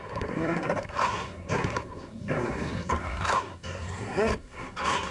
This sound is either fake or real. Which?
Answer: fake